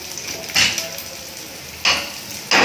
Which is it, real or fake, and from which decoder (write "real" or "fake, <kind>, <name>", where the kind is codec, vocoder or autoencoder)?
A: real